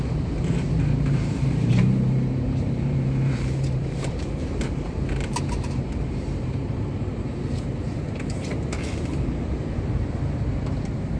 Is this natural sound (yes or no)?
no